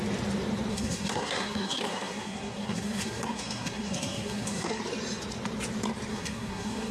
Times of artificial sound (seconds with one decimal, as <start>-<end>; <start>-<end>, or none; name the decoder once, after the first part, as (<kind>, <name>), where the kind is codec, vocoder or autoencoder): 0.7-4.8 (codec, SNAC); 6.1-6.9